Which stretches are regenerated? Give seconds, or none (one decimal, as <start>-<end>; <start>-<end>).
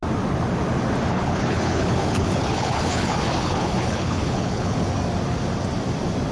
1.1-4.9